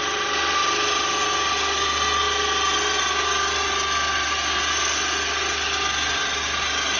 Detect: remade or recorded recorded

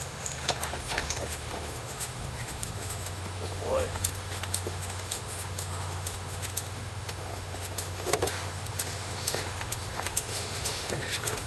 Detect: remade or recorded remade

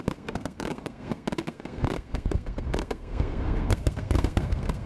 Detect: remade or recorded remade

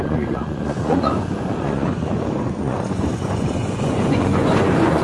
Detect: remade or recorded remade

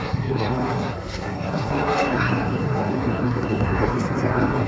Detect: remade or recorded remade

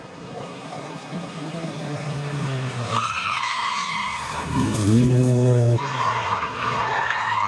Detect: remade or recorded remade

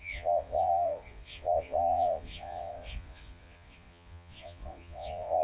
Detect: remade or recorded remade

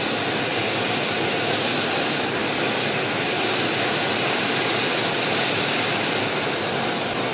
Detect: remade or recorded recorded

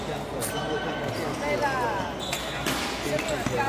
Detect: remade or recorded recorded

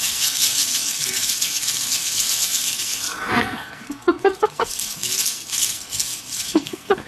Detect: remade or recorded remade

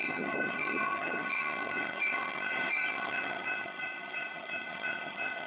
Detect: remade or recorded remade